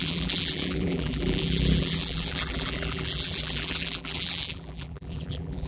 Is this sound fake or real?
fake